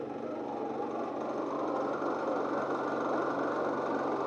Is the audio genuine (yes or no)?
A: yes